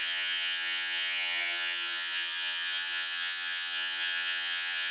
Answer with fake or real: fake